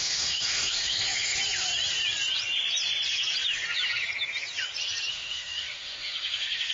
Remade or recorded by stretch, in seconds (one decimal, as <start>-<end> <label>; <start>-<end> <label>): 0.0-1.3 remade; 1.3-5.1 recorded; 5.1-6.7 remade